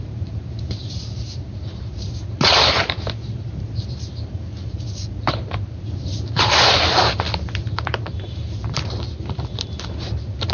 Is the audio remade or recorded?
remade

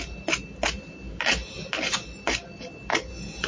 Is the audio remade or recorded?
recorded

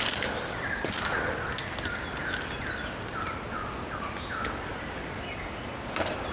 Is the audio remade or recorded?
recorded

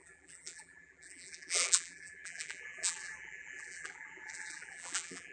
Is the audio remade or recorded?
remade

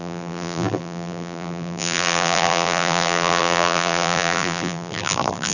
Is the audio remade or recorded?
remade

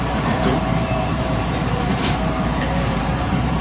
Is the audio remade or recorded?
remade